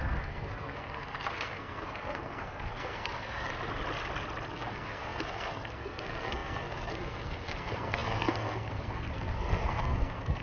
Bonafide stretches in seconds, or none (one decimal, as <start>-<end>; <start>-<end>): 3.5-4.5